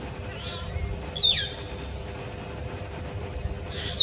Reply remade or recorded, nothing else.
recorded